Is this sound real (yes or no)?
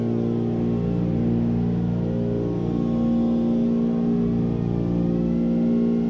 yes